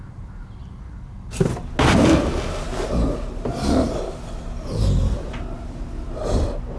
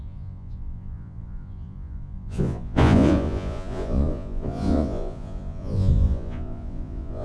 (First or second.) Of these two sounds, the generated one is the second